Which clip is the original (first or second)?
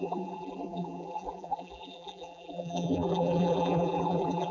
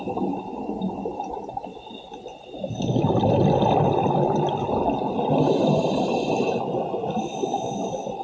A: second